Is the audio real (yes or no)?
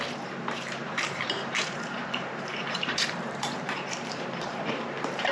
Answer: no